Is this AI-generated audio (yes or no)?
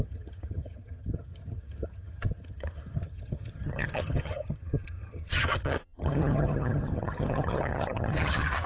yes